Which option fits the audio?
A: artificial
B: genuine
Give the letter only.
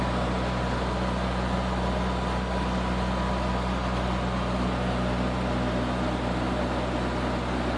B